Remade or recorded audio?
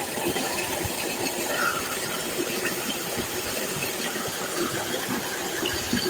recorded